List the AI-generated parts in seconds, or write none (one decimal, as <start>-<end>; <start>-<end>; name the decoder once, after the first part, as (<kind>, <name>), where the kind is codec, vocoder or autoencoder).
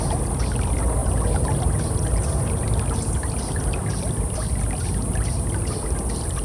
none